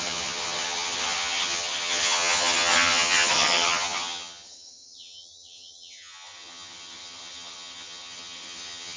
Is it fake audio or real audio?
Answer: fake